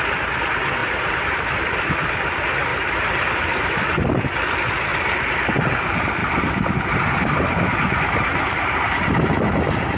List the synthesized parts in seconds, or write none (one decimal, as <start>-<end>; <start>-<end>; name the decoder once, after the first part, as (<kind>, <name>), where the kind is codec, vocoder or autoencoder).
0.8-1.8 (vocoder, BigVGAN v2); 2.7-4.2; 4.9-5.5; 6.2-9.3